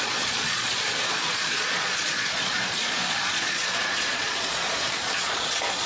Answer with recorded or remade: remade